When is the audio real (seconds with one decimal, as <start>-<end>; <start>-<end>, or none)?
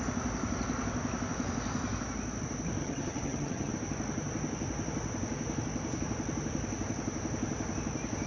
0.0-2.8; 3.7-8.3